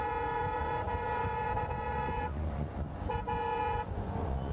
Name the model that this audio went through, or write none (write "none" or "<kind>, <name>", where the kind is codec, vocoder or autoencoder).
vocoder, Vocos